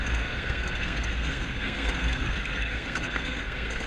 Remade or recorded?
remade